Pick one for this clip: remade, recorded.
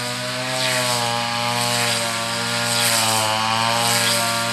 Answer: recorded